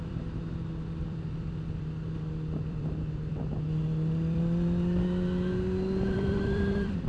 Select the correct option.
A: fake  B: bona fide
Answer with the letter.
A